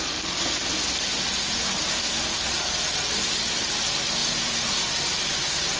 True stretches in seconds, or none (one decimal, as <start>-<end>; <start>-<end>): 0.0-4.2; 4.9-5.8